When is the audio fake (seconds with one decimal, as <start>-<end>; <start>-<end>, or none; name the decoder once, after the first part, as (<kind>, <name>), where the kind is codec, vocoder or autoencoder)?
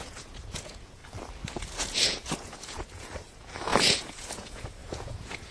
0.0-1.0 (vocoder, Vocos); 1.5-5.5